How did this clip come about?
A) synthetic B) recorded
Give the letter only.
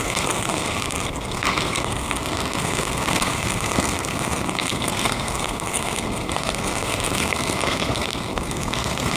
A